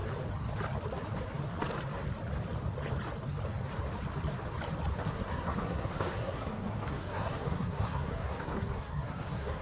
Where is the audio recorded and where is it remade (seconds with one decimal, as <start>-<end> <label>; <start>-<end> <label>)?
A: 0.0-4.9 recorded; 4.9-9.6 remade